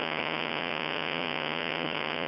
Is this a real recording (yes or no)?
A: no